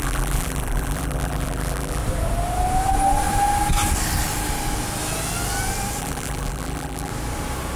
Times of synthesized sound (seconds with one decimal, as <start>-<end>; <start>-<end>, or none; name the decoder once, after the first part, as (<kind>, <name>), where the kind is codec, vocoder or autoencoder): 0.0-2.0 (vocoder, BigVGAN v2); 6.0-7.1